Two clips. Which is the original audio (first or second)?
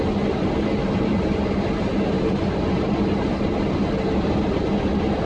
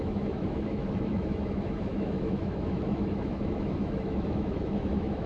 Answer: first